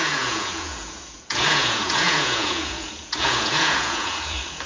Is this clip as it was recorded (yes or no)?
no